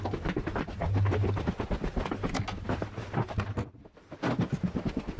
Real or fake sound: real